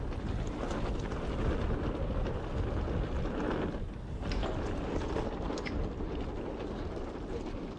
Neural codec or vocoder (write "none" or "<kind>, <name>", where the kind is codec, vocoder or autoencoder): none